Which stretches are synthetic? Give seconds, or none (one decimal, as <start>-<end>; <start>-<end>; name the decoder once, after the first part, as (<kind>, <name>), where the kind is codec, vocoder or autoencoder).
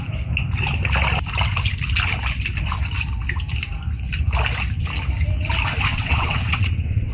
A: 5.9-7.1 (vocoder, WaveNeXt)